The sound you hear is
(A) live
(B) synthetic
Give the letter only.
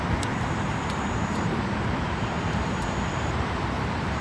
B